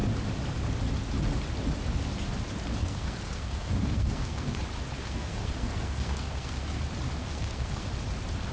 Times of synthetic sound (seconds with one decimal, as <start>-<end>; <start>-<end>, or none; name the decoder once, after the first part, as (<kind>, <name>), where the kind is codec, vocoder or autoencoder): 2.7-4.6 (codec, SNAC); 5.0-6.8; 7.2-7.9